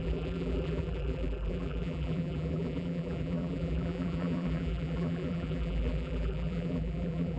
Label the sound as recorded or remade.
remade